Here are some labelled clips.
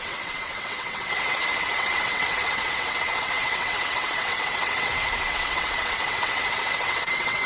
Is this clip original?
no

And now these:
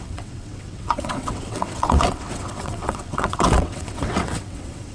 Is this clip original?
no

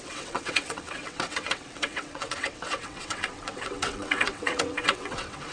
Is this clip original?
no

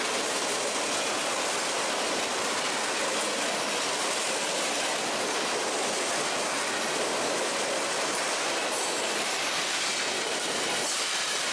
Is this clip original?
yes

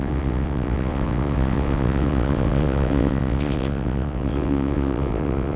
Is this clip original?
no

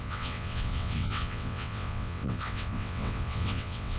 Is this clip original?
no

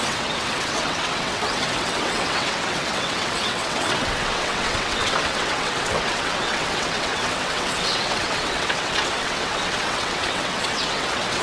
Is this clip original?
no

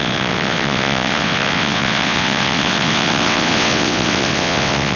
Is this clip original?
no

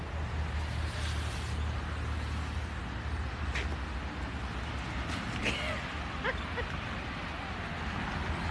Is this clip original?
yes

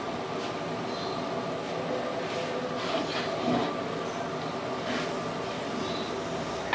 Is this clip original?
yes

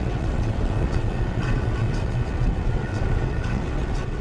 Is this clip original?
no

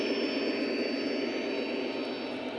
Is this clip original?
yes